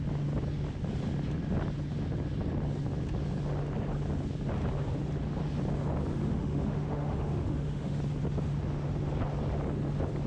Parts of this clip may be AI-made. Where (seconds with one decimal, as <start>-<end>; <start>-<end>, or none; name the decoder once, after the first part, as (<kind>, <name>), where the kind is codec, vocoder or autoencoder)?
6.2-8.0 (autoencoder, DAC-VAE)